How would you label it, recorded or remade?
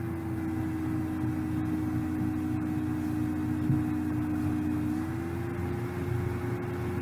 recorded